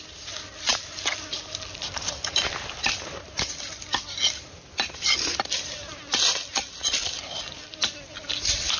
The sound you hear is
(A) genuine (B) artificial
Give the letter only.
A